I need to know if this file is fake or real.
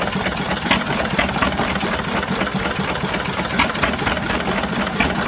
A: real